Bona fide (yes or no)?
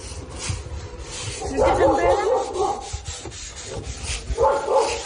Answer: yes